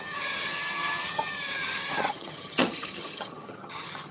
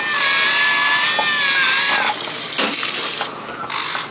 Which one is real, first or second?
second